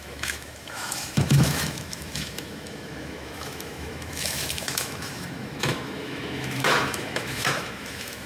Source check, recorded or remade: remade